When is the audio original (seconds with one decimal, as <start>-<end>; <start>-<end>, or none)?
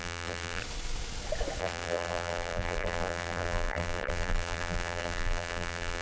0.6-1.6